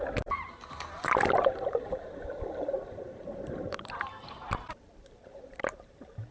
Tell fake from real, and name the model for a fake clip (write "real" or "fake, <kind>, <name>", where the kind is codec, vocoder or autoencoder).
fake, vocoder, BigVGAN v2